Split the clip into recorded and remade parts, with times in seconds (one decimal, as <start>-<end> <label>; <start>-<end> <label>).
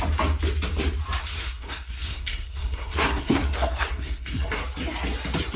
0.0-1.2 recorded; 1.2-4.6 remade; 4.6-5.6 recorded